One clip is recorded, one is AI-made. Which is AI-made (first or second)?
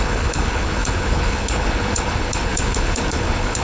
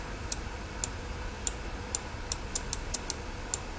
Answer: first